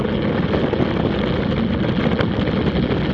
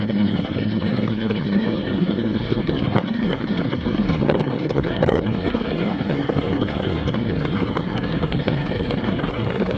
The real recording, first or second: first